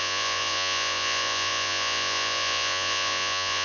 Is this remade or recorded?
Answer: remade